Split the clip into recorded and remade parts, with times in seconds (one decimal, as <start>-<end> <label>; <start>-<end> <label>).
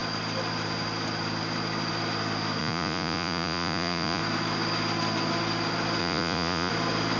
0.0-2.6 recorded; 2.6-4.2 remade; 4.2-6.0 recorded; 6.0-6.7 remade; 6.7-7.2 recorded